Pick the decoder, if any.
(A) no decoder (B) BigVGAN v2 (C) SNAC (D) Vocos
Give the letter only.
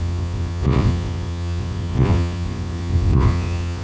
D